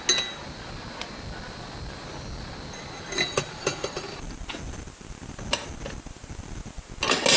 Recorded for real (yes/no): yes